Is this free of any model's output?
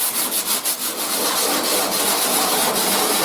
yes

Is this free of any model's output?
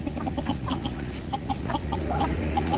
no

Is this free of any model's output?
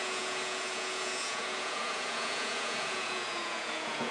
no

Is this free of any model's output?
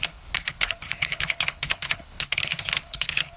no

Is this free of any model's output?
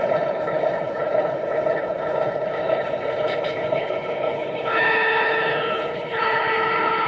no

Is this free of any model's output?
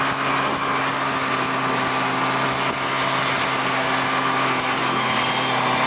yes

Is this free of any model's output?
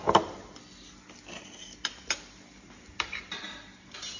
yes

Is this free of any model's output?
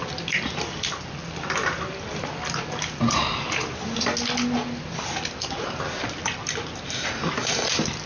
yes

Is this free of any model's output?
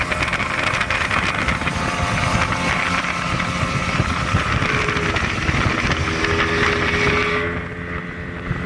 yes